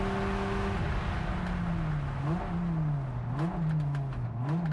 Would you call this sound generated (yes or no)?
no